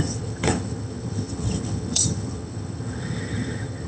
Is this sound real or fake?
fake